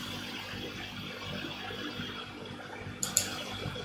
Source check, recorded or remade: recorded